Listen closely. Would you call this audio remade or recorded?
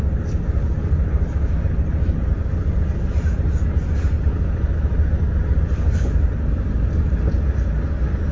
recorded